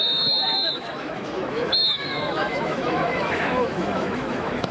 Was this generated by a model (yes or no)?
yes